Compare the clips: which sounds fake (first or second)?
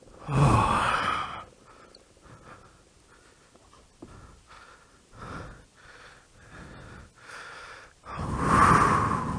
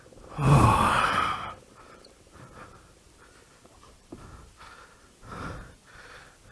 second